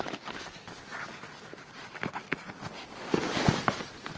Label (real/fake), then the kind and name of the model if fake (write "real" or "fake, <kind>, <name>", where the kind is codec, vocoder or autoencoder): real